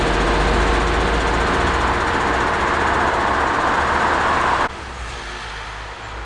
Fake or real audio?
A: real